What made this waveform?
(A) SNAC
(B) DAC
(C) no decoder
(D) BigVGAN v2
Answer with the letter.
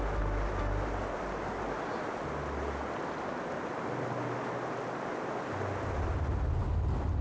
C